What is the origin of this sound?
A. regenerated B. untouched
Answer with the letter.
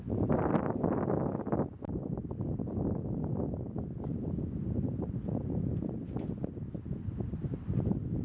B